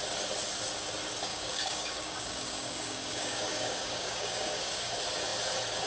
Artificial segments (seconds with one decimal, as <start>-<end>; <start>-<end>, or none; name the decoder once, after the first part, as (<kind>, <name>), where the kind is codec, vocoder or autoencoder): 1.3-4.8 (codec, DAC)